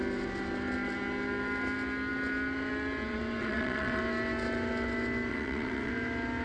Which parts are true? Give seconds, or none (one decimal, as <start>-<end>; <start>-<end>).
0.0-3.4; 4.0-5.3; 5.9-6.4